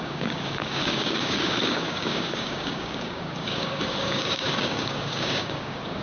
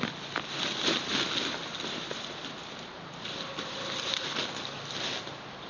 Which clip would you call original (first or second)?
second